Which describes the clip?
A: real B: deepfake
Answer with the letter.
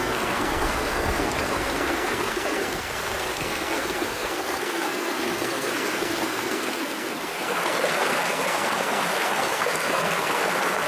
B